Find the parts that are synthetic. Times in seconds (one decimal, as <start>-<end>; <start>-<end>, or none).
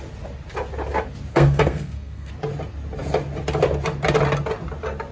1.3-2.3